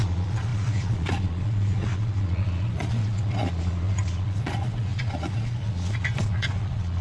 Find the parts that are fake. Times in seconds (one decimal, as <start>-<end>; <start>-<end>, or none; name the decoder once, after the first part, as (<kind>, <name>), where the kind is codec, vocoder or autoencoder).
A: 0.0-7.0 (vocoder, Vocos)